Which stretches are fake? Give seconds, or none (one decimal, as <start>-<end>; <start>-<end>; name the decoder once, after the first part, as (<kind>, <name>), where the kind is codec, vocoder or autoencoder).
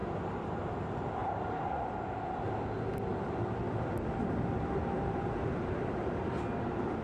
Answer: 0.0-0.6 (vocoder, BigVGAN v2); 1.2-2.2; 3.1-6.3